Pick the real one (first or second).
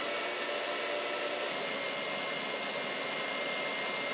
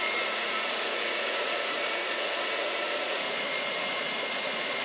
first